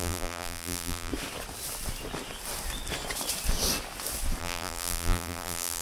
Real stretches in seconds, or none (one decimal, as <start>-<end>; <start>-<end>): 1.1-4.4